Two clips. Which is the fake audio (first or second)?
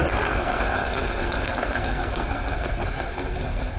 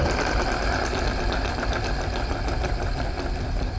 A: first